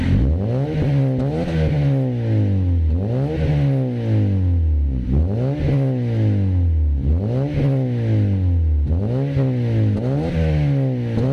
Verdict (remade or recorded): recorded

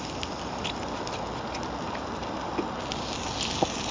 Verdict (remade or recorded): recorded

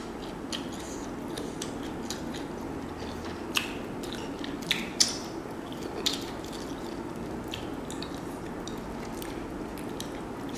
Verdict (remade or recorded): recorded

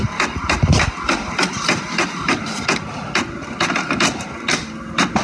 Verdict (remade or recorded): recorded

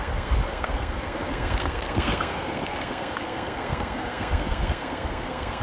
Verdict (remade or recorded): remade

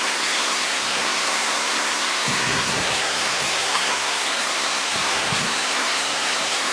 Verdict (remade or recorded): remade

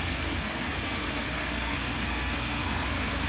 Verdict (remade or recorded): remade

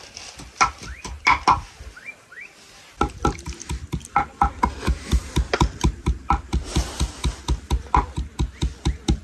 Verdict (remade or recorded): recorded